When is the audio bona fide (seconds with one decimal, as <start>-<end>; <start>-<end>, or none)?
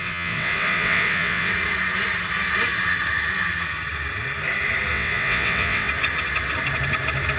1.5-4.9; 5.9-7.4